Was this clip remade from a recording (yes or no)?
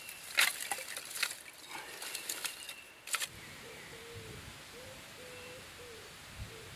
no